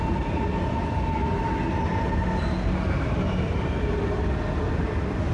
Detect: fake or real real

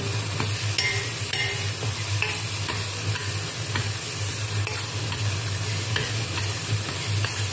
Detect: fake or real real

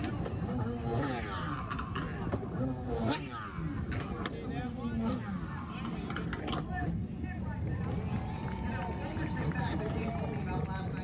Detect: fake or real real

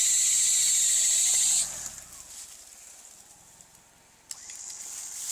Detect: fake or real real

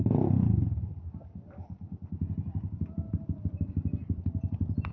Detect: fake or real real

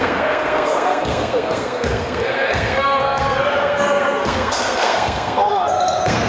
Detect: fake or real fake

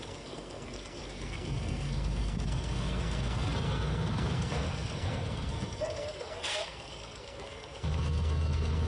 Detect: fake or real fake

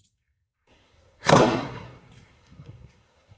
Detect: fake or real fake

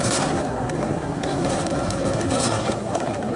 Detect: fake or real fake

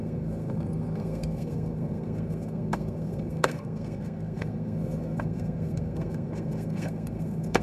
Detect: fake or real fake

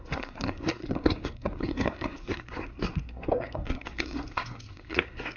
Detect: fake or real fake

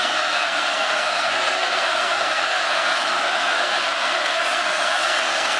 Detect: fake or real fake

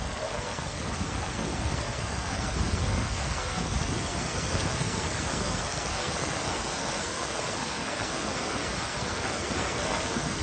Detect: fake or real fake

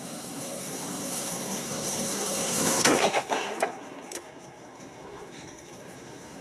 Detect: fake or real fake